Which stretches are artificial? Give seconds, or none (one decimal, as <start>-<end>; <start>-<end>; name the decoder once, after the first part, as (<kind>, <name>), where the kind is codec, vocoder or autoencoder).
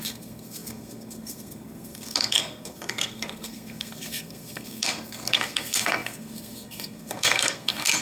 0.0-8.0 (codec, SNAC)